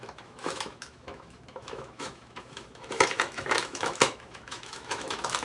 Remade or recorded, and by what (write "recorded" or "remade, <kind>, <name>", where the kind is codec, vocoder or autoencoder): remade, autoencoder, DAC-VAE